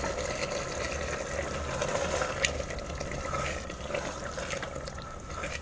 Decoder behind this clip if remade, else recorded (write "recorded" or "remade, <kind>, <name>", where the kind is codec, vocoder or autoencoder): recorded